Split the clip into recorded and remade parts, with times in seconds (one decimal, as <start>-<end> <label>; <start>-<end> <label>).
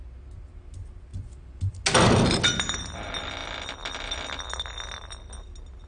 0.0-5.9 recorded